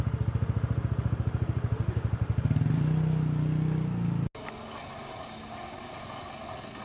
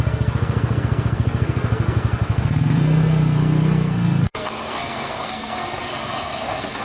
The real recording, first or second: first